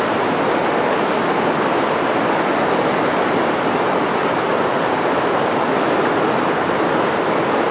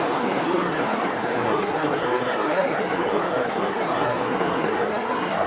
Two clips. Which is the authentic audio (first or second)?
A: first